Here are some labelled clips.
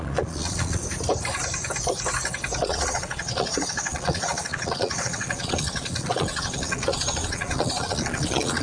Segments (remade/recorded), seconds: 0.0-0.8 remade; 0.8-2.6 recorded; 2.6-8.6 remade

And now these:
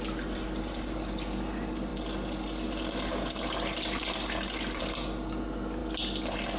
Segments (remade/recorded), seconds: 0.0-6.6 recorded

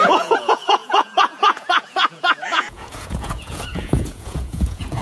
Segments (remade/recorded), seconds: 0.0-5.0 remade